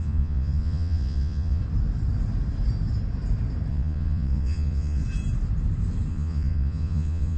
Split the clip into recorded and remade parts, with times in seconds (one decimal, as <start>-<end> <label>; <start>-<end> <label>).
0.0-1.6 remade; 1.6-3.7 recorded; 3.7-5.0 remade; 5.0-6.1 recorded; 6.1-7.4 remade